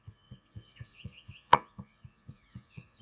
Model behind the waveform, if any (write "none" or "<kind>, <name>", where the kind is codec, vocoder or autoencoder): vocoder, Vocos